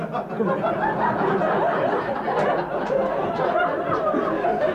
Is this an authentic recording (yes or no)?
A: yes